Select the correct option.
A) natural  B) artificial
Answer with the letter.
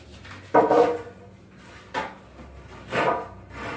A